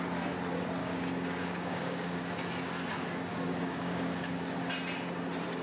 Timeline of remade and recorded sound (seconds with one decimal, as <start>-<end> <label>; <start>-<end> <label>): 0.0-0.8 recorded; 0.8-2.2 remade; 2.2-3.3 recorded; 3.3-4.4 remade; 4.4-5.6 recorded